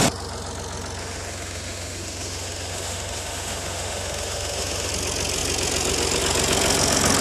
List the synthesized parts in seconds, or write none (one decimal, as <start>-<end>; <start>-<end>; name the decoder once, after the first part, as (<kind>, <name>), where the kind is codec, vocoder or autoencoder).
1.0-4.9 (autoencoder, DAC-VAE)